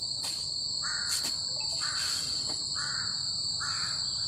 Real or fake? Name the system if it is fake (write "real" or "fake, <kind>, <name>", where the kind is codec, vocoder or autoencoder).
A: fake, vocoder, BigVGAN v2